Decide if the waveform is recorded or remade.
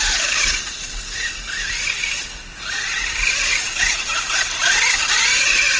recorded